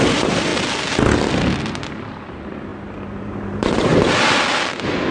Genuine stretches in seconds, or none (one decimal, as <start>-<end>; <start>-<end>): 0.5-2.1; 2.7-3.2; 3.9-5.1